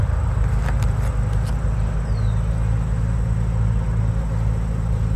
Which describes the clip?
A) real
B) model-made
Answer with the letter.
A